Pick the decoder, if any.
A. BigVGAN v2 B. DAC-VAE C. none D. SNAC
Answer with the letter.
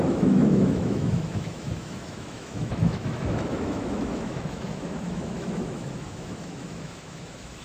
B